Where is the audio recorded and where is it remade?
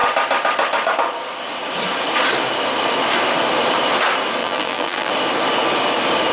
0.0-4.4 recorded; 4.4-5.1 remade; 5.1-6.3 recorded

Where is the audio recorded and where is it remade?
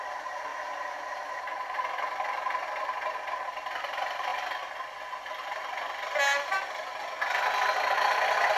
0.0-0.5 recorded; 0.5-1.8 remade; 1.8-8.6 recorded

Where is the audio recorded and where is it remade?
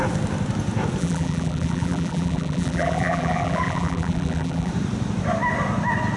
0.0-1.0 recorded; 1.0-4.7 remade; 4.7-6.2 recorded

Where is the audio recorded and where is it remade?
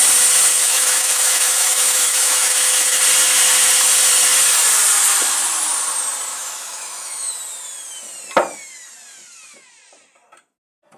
0.0-0.5 recorded; 0.5-3.0 remade; 3.0-6.3 recorded; 6.3-7.3 remade; 7.3-11.0 recorded